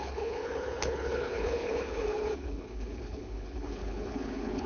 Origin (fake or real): fake